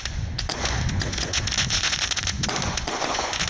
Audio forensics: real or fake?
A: fake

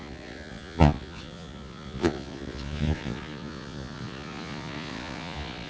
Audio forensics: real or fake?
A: fake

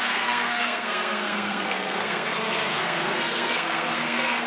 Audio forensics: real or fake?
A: fake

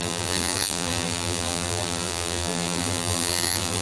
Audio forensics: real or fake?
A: fake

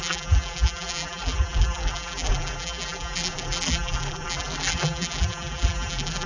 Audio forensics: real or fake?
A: fake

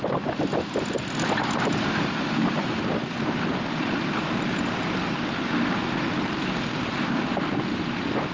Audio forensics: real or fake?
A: real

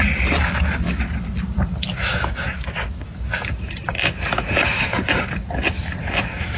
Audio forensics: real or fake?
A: real